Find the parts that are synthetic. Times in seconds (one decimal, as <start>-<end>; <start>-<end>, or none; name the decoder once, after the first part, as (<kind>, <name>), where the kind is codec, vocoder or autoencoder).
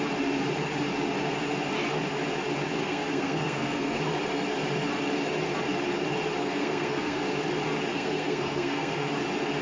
2.8-4.0 (codec, SNAC); 6.4-7.3; 7.9-9.1